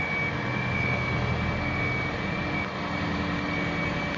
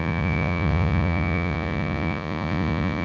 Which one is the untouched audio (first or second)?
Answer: first